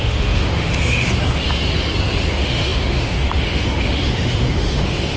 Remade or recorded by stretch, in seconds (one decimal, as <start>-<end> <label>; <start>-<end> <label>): 0.0-1.1 remade; 1.1-2.3 recorded; 2.3-5.2 remade